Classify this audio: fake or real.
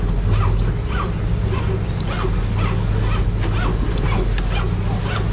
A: real